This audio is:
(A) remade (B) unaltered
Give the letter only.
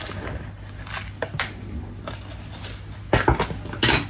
B